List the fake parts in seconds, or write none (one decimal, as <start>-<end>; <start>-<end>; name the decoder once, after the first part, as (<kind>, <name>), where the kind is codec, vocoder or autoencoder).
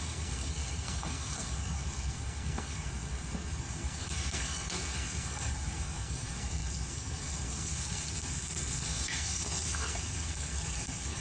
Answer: 0.0-11.2 (codec, SNAC)